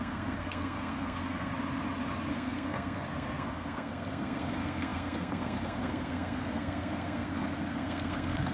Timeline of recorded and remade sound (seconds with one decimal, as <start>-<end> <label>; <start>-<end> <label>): 0.0-1.5 remade; 1.5-2.3 recorded; 2.3-8.5 remade